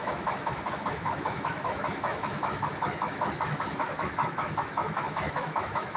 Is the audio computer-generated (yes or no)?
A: yes